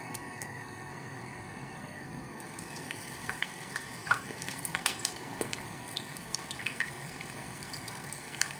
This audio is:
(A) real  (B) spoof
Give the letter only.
B